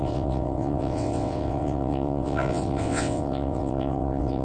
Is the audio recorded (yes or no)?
no